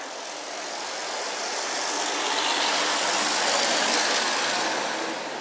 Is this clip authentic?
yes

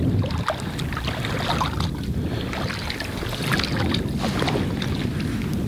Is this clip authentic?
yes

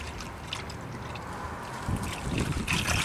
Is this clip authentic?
yes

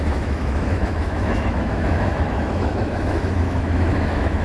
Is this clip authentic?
no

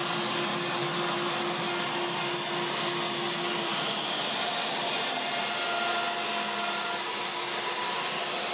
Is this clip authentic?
yes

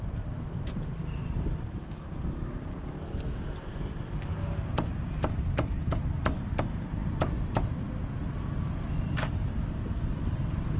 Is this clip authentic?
yes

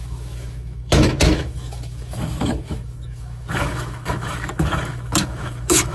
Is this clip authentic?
no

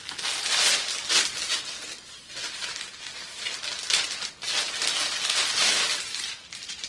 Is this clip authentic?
yes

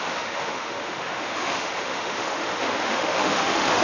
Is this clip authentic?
no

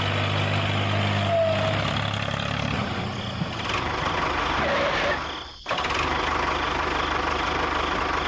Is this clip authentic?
yes